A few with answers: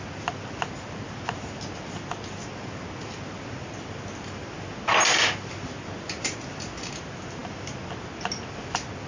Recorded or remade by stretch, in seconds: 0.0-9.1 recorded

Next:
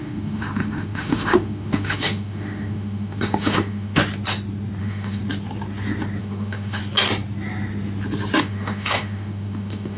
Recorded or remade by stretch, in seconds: 0.0-4.0 remade; 4.0-4.8 recorded; 4.8-5.2 remade; 5.2-6.2 recorded; 6.2-6.8 remade; 6.8-8.4 recorded; 8.4-10.0 remade

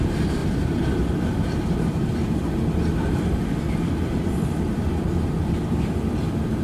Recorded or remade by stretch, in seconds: 0.0-0.4 recorded; 0.4-3.4 remade; 3.4-6.6 recorded

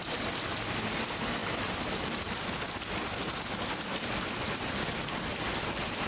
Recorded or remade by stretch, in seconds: 0.0-6.1 recorded

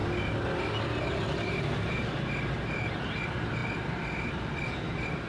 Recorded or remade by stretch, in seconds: 0.0-5.3 recorded

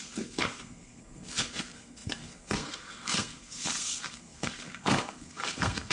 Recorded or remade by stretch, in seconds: 0.0-5.9 remade

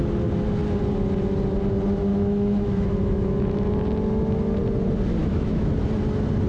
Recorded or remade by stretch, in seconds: 0.0-2.1 recorded; 2.1-3.7 remade; 3.7-5.2 recorded; 5.2-5.7 remade; 5.7-6.5 recorded

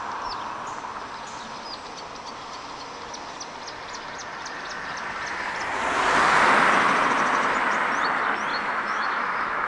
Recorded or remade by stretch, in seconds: 0.0-8.5 recorded; 8.5-9.7 remade